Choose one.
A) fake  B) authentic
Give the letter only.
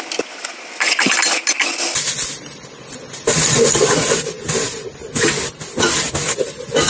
B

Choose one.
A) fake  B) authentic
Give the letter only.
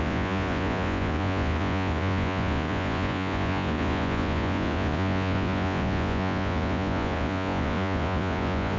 A